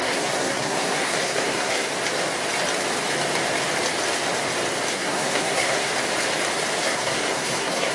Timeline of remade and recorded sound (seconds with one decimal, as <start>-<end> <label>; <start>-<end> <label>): 0.0-1.9 remade; 1.9-4.9 recorded; 4.9-5.9 remade; 5.9-6.8 recorded; 6.8-7.9 remade